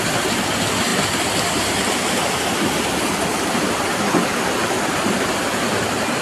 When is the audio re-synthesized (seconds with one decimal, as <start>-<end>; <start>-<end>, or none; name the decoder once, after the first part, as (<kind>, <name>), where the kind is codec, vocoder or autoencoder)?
none